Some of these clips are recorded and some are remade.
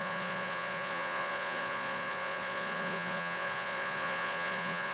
remade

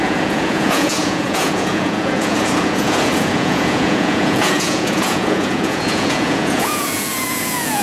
remade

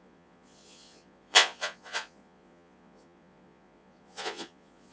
remade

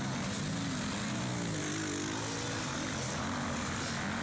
recorded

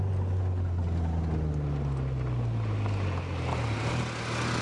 recorded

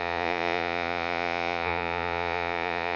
remade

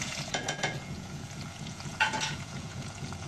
remade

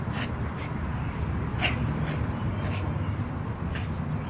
recorded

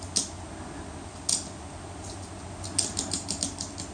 recorded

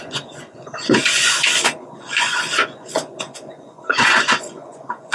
remade